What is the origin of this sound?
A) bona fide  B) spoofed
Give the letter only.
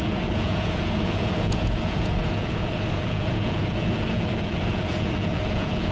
B